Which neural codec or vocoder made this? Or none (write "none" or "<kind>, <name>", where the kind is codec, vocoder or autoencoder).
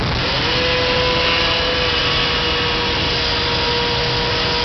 none